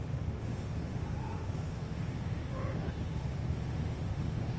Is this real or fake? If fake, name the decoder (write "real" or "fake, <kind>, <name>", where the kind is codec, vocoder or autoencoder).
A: fake, autoencoder, DAC-VAE